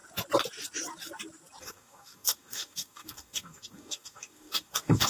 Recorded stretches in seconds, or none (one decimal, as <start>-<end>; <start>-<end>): 0.0-1.6